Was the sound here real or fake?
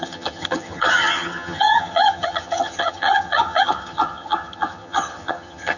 fake